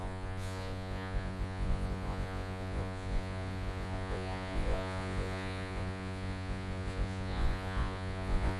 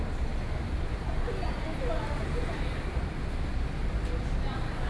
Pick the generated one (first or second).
first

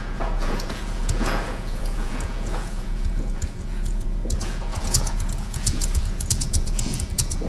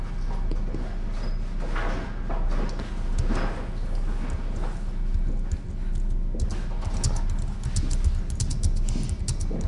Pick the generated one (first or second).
first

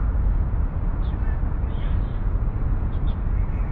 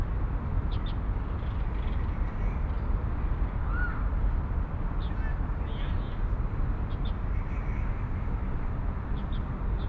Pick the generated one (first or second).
first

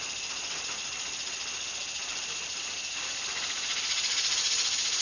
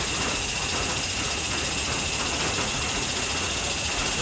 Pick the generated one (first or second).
second